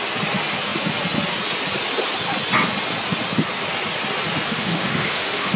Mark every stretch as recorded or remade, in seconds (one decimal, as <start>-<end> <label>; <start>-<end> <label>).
0.0-4.5 recorded; 4.5-5.6 remade